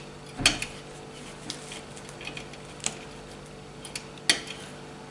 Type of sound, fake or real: real